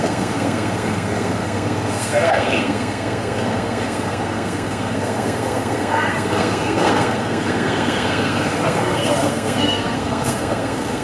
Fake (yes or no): yes